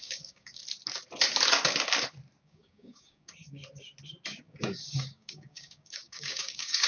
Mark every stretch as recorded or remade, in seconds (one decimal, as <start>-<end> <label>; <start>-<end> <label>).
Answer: 0.0-0.6 remade; 0.6-2.4 recorded; 2.4-3.6 remade; 3.6-4.4 recorded; 4.4-6.9 remade